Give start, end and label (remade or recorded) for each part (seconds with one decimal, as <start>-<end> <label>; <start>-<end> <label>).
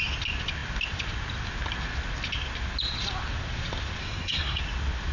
0.0-4.0 recorded; 4.0-4.6 remade; 4.6-5.1 recorded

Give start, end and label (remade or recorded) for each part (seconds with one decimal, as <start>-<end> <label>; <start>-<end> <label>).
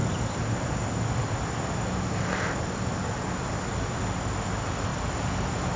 0.0-5.8 recorded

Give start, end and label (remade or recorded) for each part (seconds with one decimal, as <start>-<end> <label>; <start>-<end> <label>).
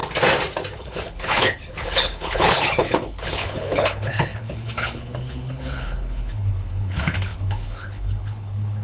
0.0-0.8 recorded; 0.8-8.8 remade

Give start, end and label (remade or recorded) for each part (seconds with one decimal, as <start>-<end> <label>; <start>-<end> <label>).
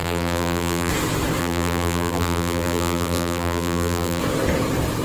0.0-0.9 remade; 0.9-1.4 recorded; 1.4-4.2 remade; 4.2-5.0 recorded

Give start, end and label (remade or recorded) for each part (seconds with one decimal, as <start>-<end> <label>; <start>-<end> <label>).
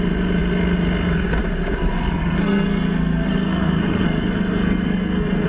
0.0-1.9 recorded; 1.9-5.5 remade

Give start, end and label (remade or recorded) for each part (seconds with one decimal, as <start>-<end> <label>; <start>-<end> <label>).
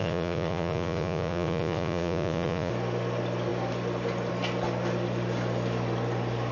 0.0-2.7 remade; 2.7-6.5 recorded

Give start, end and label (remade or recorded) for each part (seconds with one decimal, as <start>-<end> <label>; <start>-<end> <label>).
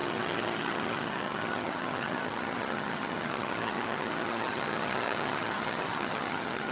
0.0-6.7 remade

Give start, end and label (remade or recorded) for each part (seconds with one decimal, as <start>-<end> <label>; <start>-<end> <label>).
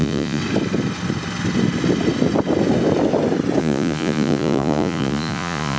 0.0-0.4 remade; 0.4-3.6 recorded; 3.6-5.8 remade